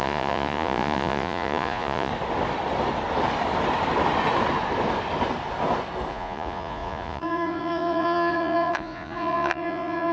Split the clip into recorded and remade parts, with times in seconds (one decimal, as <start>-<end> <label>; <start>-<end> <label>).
0.0-2.1 remade; 2.1-6.1 recorded; 6.1-10.1 remade